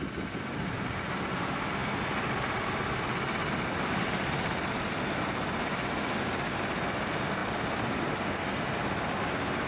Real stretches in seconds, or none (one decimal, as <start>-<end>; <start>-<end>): 0.0-9.7